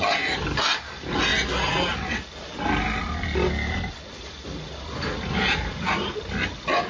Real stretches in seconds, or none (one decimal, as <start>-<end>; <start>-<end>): 0.0-6.9